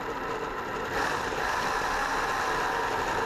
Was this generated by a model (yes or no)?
no